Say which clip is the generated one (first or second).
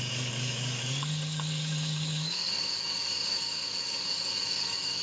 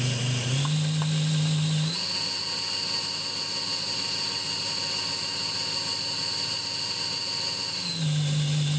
first